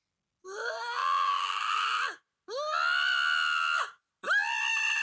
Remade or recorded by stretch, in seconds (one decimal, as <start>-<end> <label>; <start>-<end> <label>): 0.0-5.0 recorded